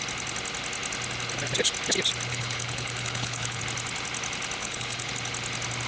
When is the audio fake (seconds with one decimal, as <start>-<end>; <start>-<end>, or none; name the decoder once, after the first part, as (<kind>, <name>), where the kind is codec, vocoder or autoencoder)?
2.3-3.6 (codec, HILCodec); 4.6-5.1